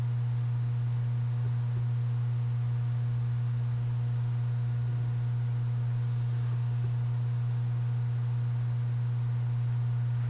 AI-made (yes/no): no